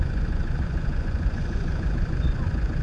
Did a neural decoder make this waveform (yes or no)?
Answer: yes